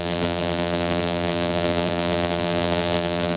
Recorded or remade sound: remade